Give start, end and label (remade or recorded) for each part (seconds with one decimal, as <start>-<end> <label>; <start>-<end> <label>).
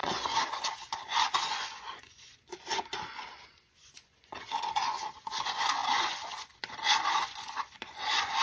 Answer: 0.0-8.4 remade